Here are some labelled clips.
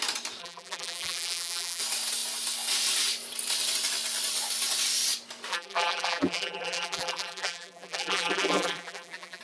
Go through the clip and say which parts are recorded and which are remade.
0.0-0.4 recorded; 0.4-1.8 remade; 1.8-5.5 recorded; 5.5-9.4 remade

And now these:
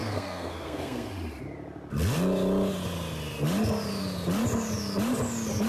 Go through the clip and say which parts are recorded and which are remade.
0.0-1.1 remade; 1.1-5.7 recorded